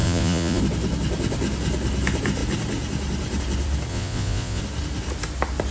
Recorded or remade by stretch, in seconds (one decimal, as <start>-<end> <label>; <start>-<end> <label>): 0.0-0.6 remade; 0.6-3.9 recorded; 3.9-4.6 remade; 4.6-5.7 recorded

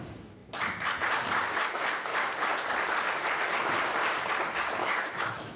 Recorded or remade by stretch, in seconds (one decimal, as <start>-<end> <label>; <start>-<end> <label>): 0.0-4.8 recorded; 4.8-5.6 remade

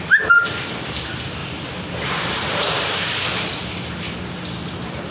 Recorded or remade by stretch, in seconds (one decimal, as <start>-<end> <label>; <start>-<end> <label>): 0.0-1.4 recorded; 1.4-2.7 remade; 2.7-5.1 recorded